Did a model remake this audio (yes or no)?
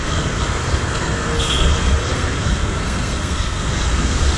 yes